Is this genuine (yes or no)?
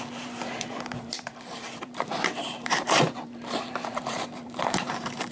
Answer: no